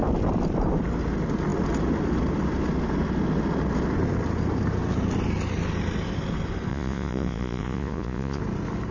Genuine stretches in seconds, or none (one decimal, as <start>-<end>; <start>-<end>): 0.0-6.7; 8.4-8.9